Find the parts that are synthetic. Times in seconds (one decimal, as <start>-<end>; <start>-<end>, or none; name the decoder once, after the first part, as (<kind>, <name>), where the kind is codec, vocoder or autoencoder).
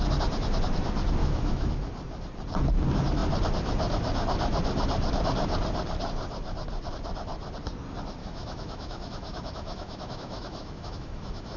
1.2-1.7 (autoencoder, DAC-VAE); 8.2-11.6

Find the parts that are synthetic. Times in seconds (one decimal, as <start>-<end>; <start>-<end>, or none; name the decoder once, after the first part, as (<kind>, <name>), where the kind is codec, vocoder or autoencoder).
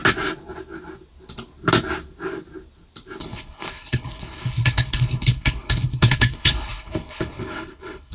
3.2-8.1 (codec, HILCodec)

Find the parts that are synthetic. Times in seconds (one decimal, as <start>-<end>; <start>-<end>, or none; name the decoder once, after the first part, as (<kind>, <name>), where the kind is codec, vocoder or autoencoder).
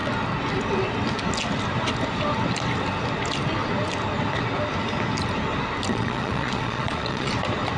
5.9-7.3 (vocoder, Vocos)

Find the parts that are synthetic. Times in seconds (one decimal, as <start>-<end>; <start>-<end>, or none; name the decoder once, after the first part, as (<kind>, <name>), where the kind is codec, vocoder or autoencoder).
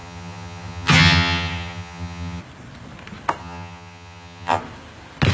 0.0-2.4 (vocoder, HiFi-GAN); 3.4-4.6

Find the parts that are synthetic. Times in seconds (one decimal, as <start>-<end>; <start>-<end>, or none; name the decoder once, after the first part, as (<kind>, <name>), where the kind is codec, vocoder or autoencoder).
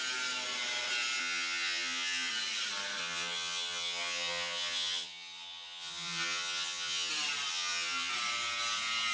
1.2-2.3 (vocoder, HiFi-GAN); 3.0-7.1; 7.5-8.1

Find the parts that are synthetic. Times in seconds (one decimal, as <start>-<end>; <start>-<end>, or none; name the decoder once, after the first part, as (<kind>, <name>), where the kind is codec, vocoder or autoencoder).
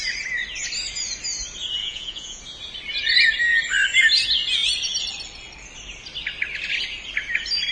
1.8-2.4 (vocoder, Vocos)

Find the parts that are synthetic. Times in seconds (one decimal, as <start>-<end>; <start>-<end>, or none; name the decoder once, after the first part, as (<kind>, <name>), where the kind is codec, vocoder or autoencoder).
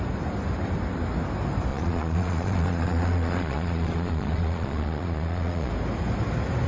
1.7-5.7 (vocoder, Vocos)